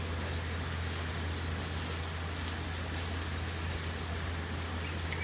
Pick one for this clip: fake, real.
real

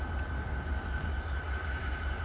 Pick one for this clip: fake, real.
real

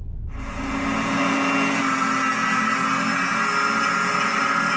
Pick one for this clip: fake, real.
real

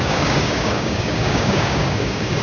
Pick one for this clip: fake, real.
fake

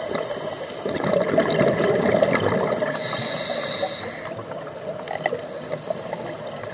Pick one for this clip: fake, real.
real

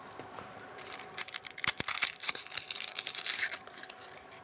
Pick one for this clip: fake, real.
fake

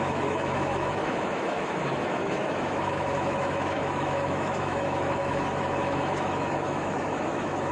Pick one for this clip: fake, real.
fake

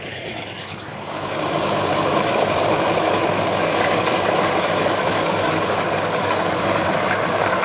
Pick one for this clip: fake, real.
fake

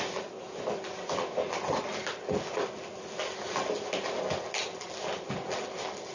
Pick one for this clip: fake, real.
real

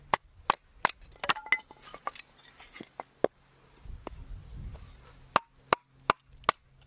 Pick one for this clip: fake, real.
real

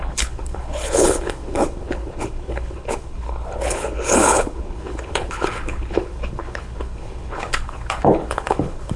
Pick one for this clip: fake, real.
fake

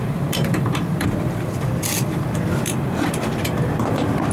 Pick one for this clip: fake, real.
fake